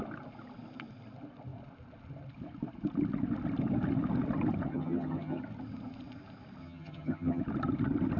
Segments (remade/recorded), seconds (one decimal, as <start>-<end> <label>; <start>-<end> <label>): 0.0-4.7 recorded; 4.7-5.4 remade; 5.4-6.6 recorded; 6.6-7.4 remade; 7.4-8.2 recorded